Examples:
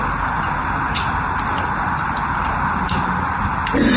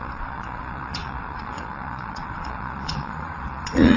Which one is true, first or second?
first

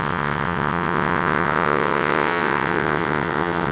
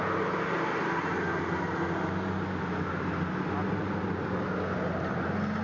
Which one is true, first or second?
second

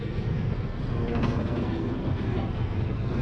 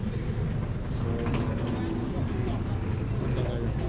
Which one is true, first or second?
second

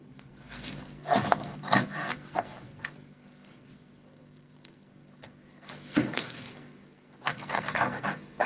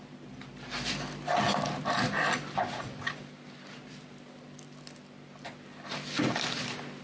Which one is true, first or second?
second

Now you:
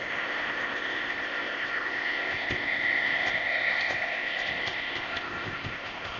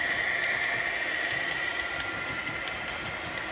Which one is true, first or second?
second